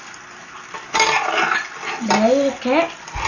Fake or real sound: real